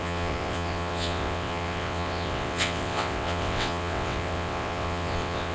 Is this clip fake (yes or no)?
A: yes